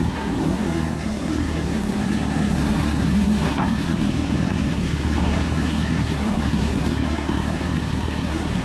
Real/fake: fake